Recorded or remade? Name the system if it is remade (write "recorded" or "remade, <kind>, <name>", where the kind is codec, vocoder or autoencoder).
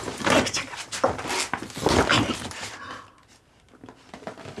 recorded